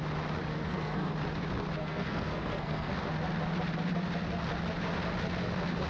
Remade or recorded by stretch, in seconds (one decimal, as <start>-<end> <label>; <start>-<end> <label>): 0.0-0.5 recorded; 0.5-1.1 remade; 1.1-1.8 recorded; 1.8-2.9 remade; 2.9-5.9 recorded